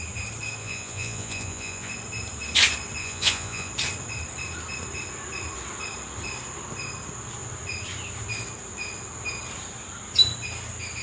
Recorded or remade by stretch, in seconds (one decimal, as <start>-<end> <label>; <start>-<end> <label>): 0.0-0.6 recorded; 0.6-1.9 remade; 1.9-3.0 recorded; 3.0-3.7 remade; 3.7-11.0 recorded